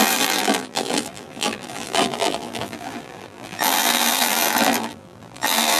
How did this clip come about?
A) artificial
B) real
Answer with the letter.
A